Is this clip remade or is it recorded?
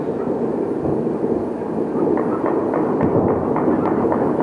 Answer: recorded